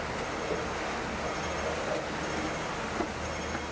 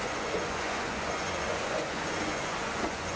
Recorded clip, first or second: first